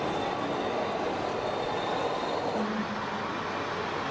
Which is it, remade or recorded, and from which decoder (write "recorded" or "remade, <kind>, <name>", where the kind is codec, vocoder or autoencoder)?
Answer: recorded